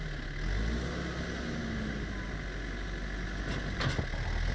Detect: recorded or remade recorded